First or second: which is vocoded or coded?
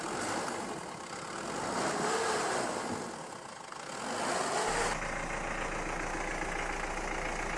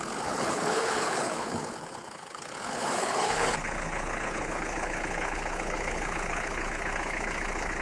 second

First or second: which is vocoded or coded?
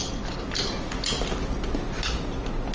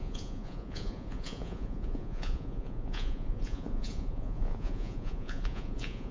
second